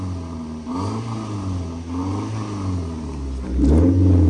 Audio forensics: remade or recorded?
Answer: recorded